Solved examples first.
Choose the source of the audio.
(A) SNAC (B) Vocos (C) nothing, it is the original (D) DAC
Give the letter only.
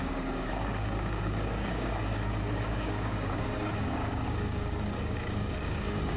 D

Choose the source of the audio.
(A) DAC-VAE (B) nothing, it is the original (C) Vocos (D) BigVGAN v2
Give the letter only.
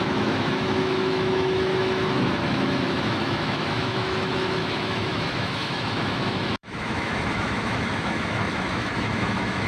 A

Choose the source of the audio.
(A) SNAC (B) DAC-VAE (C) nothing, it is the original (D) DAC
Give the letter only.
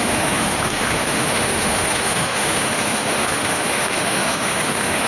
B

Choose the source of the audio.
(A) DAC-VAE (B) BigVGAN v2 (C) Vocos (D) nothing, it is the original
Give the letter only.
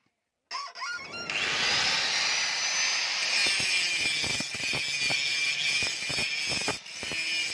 D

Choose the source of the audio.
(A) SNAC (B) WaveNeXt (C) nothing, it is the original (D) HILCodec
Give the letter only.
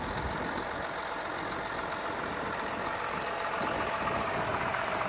C